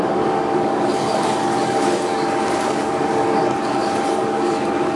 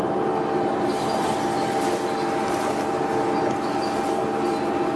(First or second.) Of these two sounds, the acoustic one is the second